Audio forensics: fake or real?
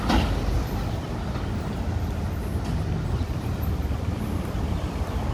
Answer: real